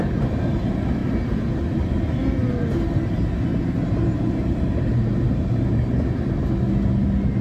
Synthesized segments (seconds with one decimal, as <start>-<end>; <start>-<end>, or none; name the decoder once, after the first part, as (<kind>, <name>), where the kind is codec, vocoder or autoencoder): 3.5-5.9 (vocoder, BigVGAN v2)